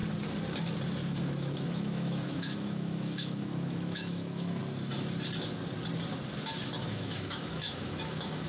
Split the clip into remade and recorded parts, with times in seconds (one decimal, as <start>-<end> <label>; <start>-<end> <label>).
0.0-1.2 recorded; 1.2-4.6 remade; 4.6-6.8 recorded; 6.8-8.5 remade